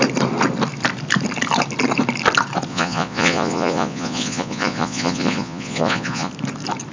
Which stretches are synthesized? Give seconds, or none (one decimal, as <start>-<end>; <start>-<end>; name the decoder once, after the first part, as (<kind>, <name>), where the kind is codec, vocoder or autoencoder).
2.7-6.3 (vocoder, Vocos)